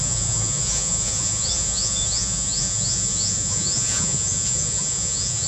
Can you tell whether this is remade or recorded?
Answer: remade